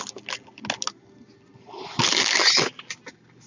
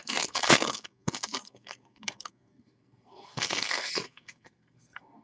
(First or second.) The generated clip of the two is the second